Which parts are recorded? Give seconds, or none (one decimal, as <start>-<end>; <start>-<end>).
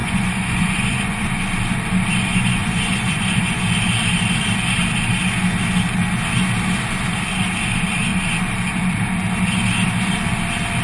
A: 1.3-2.2; 3.6-10.8